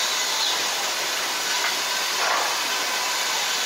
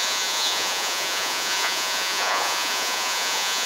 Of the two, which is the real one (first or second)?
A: first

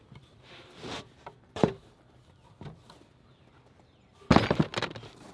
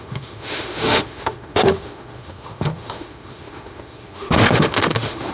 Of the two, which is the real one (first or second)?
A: first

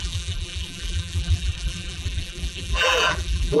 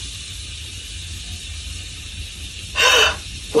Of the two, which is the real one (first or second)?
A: second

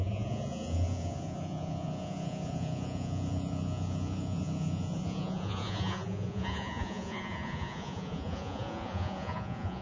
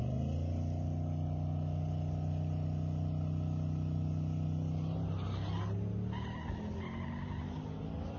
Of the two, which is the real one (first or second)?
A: second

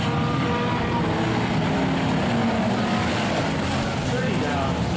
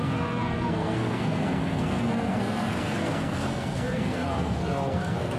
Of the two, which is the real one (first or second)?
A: first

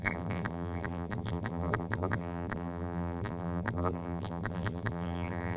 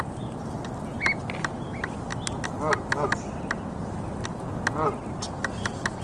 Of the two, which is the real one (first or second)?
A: second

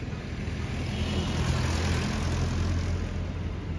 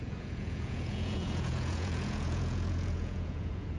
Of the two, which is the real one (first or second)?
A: first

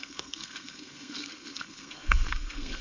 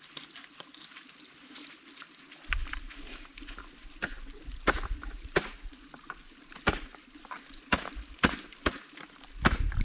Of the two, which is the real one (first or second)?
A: second